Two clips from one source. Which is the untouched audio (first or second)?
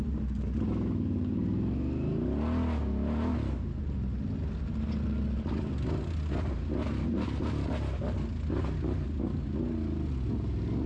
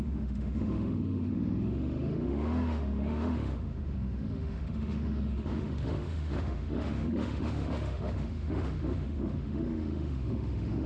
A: first